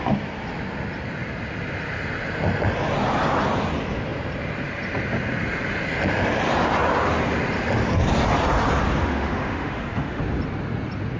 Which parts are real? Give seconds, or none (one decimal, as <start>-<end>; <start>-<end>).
0.0-9.0; 10.2-11.2